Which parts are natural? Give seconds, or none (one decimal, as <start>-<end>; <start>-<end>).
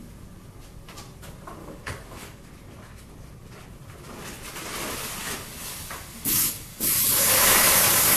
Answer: 0.0-1.6; 2.5-5.2